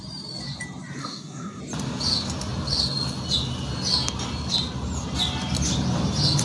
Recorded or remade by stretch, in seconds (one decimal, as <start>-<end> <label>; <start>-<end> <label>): 0.0-1.0 recorded; 1.0-1.6 remade; 1.6-6.4 recorded